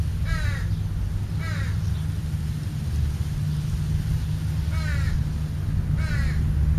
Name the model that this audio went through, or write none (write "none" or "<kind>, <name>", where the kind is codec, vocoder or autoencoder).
none